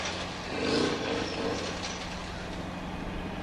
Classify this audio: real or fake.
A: real